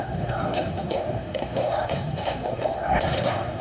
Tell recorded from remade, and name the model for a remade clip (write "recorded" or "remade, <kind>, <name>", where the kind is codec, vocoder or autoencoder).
remade, codec, SNAC